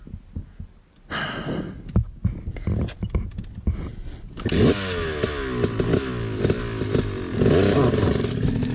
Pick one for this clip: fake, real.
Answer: real